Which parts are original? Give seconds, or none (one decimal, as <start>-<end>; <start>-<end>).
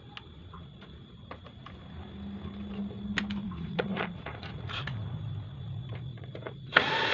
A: 0.0-0.4; 1.8-3.4; 4.8-6.1